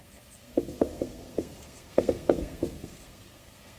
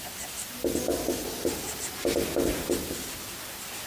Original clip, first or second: second